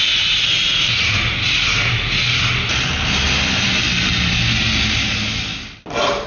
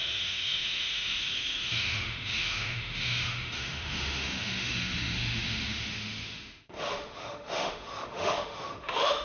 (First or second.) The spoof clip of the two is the second